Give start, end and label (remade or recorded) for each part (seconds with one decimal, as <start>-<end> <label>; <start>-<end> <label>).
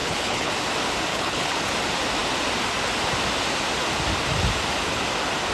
0.0-0.5 remade; 0.5-1.1 recorded; 1.1-1.7 remade; 1.7-5.5 recorded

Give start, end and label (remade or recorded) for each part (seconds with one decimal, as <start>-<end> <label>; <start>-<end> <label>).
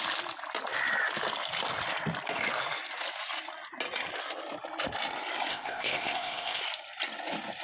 0.0-5.5 recorded; 5.5-6.6 remade; 6.6-7.6 recorded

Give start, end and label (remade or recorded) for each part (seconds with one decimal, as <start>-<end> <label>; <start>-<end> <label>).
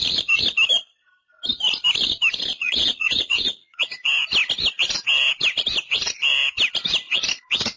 0.0-2.5 recorded; 2.5-3.9 remade; 3.9-7.8 recorded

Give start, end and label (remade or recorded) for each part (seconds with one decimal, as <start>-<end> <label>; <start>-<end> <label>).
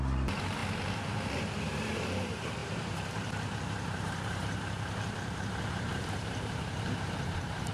0.0-0.6 remade; 0.6-1.4 recorded; 1.4-7.7 remade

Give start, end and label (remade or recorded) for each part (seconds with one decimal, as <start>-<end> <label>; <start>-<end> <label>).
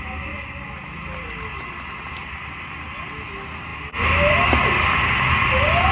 0.0-5.9 recorded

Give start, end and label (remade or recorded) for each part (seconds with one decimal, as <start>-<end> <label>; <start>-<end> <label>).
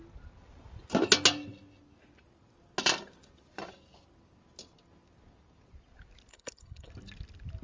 0.0-6.3 recorded; 6.3-6.9 remade; 6.9-7.6 recorded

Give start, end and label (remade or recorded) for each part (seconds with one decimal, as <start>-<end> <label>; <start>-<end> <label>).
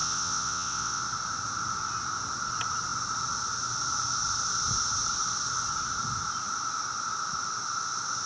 0.0-1.0 remade; 1.0-8.3 recorded